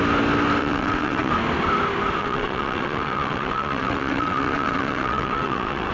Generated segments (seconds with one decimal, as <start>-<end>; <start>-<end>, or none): 0.6-1.3; 2.2-5.9